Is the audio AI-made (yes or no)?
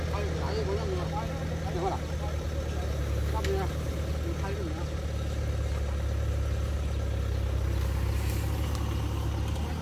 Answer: no